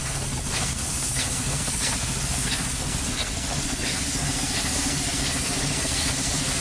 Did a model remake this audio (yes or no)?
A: yes